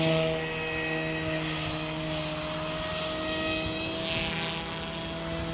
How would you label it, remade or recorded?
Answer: recorded